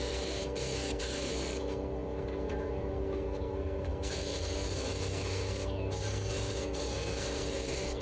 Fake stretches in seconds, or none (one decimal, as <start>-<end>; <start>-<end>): 0.0-8.0